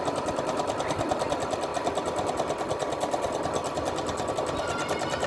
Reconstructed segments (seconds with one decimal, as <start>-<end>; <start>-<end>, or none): none